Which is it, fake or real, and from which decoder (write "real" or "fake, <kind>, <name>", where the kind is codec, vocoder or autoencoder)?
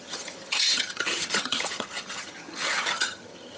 fake, vocoder, HiFi-GAN